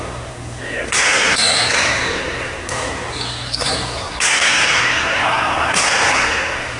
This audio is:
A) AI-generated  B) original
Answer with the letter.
A